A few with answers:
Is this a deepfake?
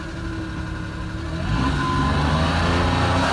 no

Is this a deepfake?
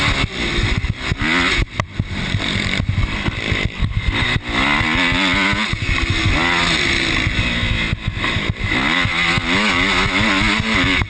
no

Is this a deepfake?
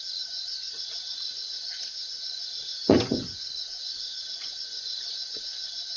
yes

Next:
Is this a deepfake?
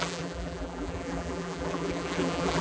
yes